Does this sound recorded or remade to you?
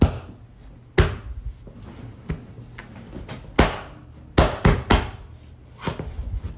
recorded